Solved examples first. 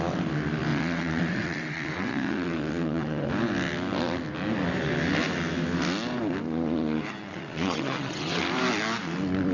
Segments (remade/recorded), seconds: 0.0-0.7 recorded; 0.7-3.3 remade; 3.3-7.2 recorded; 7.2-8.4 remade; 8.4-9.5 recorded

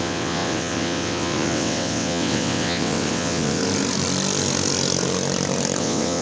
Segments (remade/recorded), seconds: 0.0-3.6 remade; 3.6-5.8 recorded; 5.8-6.2 remade

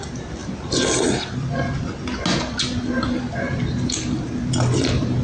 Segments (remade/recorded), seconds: 0.0-5.2 recorded

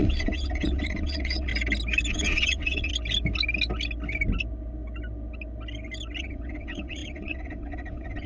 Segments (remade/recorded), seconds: 0.0-1.5 remade; 1.5-2.1 recorded; 2.1-2.9 remade; 2.9-6.2 recorded; 6.2-8.3 remade

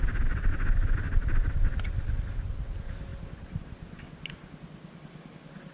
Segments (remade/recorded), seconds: 0.0-5.7 recorded

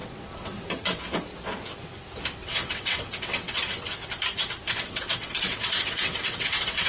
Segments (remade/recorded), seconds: 0.0-1.3 remade; 1.3-2.4 recorded; 2.4-3.6 remade; 3.6-4.7 recorded; 4.7-6.9 remade

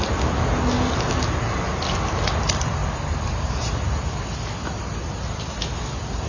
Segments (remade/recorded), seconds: 0.0-6.3 recorded

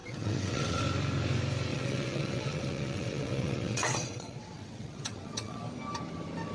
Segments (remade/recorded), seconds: 0.0-0.8 remade; 0.8-1.7 recorded; 1.7-5.6 remade; 5.6-6.5 recorded